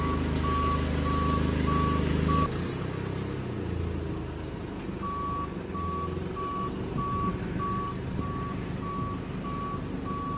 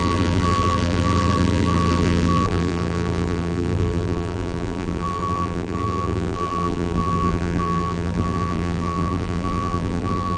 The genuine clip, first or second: first